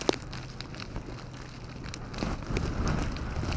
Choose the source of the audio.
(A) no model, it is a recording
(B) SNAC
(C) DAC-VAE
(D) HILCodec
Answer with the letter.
A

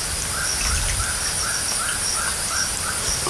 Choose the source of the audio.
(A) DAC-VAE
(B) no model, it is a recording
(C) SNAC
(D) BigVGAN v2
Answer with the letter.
B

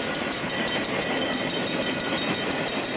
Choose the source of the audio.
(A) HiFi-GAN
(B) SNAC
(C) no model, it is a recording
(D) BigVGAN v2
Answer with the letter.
C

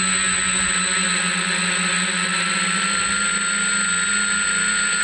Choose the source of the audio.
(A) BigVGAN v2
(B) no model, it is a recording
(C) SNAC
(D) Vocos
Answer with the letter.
B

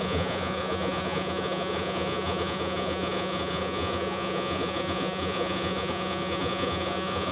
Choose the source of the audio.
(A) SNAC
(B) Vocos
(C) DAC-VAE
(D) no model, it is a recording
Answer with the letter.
B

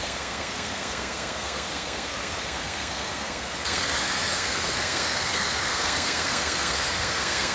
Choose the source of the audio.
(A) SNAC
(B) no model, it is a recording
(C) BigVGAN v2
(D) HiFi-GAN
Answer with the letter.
A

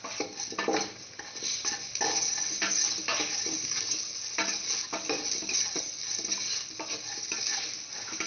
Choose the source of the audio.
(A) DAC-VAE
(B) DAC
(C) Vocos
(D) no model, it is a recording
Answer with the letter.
D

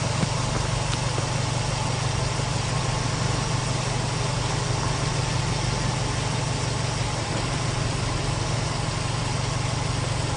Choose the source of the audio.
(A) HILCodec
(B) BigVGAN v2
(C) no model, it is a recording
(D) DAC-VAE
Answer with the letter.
C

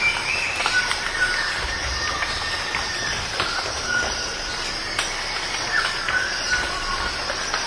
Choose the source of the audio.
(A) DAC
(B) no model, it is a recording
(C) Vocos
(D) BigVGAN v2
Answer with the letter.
B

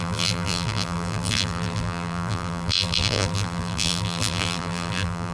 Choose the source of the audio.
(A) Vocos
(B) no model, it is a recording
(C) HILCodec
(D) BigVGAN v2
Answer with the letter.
D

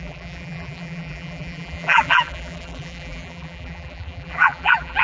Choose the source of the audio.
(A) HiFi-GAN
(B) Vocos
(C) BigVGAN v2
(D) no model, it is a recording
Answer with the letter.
C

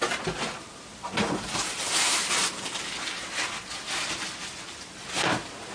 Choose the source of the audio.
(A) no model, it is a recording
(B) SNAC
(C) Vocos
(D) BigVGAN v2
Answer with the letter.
A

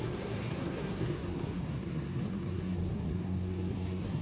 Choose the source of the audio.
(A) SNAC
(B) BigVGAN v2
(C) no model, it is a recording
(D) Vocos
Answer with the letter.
A